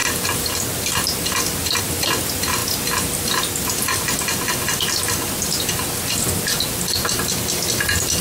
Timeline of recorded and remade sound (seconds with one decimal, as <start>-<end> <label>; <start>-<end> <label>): 0.0-8.2 recorded